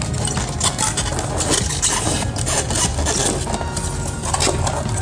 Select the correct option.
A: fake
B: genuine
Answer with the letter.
B